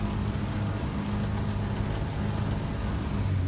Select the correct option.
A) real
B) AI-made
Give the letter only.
A